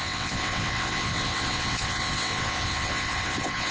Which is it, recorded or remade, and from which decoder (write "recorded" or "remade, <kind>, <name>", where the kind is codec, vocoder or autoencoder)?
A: remade, vocoder, WaveNeXt